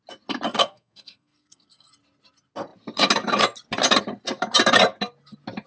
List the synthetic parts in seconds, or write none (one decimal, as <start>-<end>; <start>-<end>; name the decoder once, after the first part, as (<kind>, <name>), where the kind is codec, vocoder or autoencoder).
0.6-1.9 (codec, SNAC)

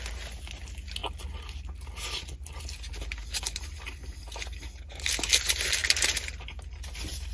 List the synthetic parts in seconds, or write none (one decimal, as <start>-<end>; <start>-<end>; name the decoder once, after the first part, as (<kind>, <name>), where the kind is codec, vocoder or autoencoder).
none

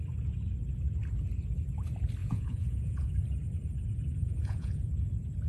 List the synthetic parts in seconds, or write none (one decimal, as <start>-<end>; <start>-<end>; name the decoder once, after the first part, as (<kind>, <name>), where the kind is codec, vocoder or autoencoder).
2.2-3.1 (vocoder, Vocos); 4.2-4.9

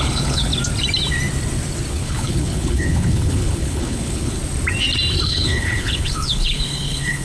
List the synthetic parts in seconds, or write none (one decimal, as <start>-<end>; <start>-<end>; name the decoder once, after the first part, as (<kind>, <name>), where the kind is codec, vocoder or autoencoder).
0.0-0.5 (codec, HILCodec); 1.9-4.4; 5.2-7.2

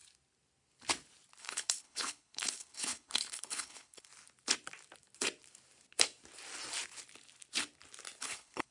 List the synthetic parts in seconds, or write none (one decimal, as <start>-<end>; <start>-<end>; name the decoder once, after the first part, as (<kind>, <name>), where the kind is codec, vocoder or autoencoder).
1.4-4.1 (codec, HILCodec); 8.2-8.7

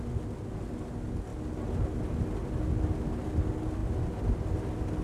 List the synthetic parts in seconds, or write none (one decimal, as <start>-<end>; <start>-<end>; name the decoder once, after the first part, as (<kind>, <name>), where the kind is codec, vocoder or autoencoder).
none

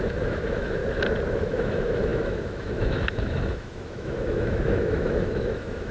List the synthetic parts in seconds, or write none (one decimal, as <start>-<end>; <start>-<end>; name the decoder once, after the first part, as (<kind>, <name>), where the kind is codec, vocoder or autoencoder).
0.0-0.8 (autoencoder, DAC-VAE); 1.3-5.9

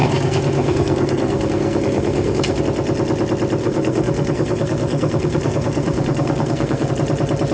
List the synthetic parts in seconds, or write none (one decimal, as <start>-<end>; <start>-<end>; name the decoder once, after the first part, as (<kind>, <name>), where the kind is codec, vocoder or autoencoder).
0.0-2.6 (codec, SNAC); 3.6-6.9